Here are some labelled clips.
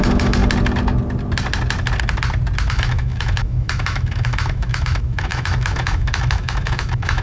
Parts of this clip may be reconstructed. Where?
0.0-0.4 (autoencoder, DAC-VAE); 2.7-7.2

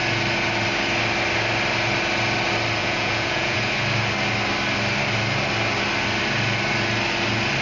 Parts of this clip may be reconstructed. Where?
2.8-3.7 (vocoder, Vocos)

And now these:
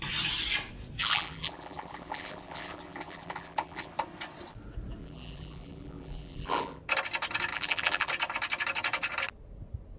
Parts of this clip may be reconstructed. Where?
1.0-3.9 (vocoder, BigVGAN v2); 5.0-6.8; 7.5-8.1